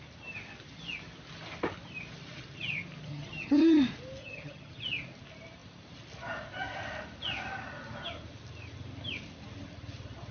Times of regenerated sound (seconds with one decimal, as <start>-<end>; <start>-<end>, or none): 3.1-3.8; 4.2-4.8